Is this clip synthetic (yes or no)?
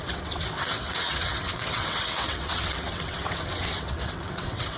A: yes